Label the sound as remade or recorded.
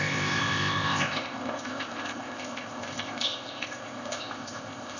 remade